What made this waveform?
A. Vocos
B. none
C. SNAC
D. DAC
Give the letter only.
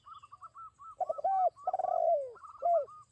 B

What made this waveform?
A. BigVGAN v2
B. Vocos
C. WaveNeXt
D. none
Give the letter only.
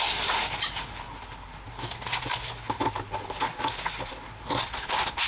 D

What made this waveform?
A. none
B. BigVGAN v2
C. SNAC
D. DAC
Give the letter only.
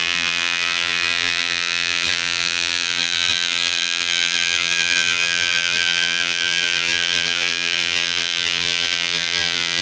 B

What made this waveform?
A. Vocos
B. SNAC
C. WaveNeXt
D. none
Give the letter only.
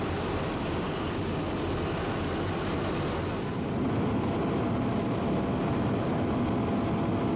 D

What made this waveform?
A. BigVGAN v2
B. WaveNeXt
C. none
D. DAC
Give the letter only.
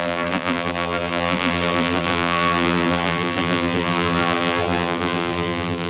A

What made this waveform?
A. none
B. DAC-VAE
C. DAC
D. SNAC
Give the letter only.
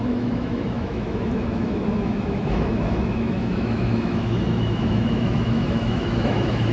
B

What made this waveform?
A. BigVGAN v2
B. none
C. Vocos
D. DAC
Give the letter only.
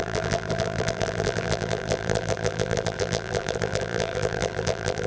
A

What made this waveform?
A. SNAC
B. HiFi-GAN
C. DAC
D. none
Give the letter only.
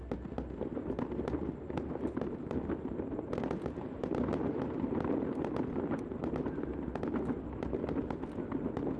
D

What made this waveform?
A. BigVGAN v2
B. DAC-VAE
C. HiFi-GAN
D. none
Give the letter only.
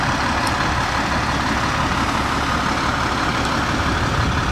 D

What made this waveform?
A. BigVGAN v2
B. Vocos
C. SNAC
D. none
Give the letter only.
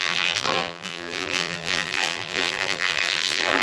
A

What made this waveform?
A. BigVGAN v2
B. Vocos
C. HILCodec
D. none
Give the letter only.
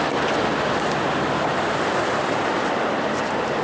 D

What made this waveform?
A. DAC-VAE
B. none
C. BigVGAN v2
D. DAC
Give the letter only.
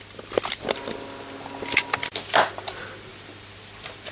B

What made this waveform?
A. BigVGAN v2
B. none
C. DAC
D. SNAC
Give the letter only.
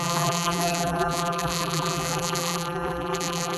A